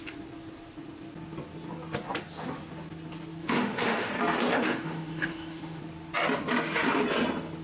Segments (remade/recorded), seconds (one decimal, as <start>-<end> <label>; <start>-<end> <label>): 0.0-3.4 recorded; 3.4-4.1 remade; 4.1-4.5 recorded; 4.5-5.8 remade; 5.8-7.6 recorded